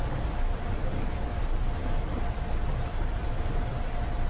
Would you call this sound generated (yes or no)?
no